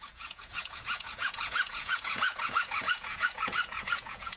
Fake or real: fake